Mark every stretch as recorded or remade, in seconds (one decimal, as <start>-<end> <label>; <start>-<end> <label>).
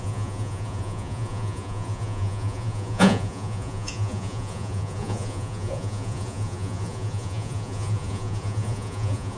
0.0-9.4 remade